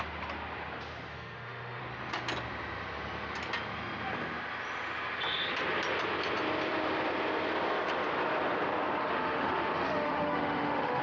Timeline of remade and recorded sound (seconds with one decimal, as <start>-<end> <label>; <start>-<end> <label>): 0.0-1.1 recorded; 1.1-1.8 remade; 1.8-9.0 recorded; 9.0-11.0 remade